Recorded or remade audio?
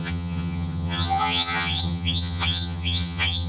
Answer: remade